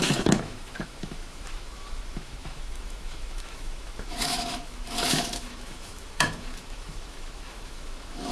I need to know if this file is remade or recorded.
remade